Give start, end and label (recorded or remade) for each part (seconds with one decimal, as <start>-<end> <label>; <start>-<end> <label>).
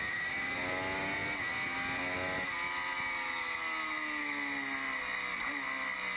0.0-6.2 recorded